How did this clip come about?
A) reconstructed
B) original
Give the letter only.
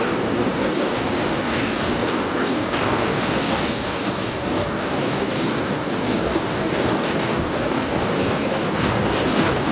A